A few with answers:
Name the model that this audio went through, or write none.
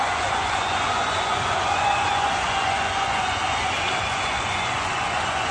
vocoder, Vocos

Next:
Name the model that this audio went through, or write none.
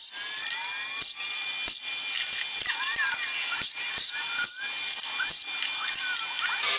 none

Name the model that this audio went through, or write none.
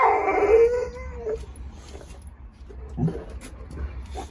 none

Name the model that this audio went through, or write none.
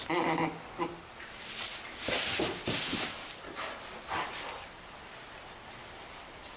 none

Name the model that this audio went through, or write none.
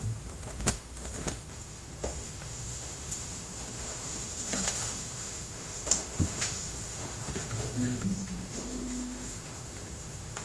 autoencoder, DAC-VAE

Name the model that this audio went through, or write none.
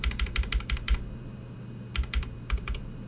vocoder, BigVGAN v2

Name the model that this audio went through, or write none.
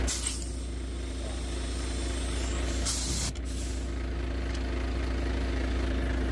none